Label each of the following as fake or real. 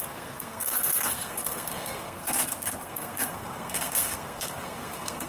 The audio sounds fake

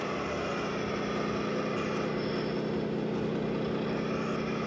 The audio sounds real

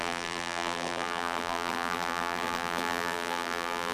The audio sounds fake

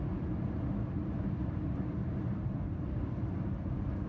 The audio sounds real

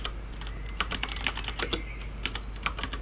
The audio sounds real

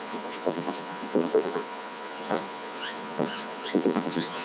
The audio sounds fake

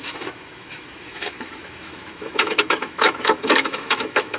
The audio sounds fake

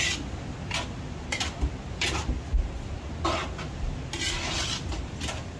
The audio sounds real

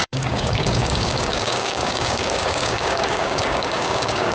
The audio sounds fake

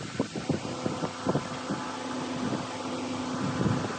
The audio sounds real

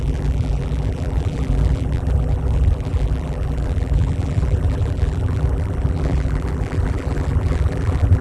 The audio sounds fake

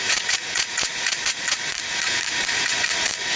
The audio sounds fake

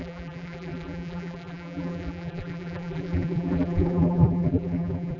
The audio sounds fake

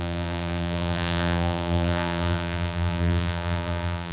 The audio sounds fake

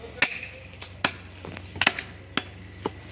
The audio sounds real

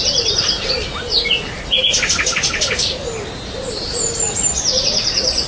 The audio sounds real